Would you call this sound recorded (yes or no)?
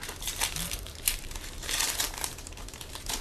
no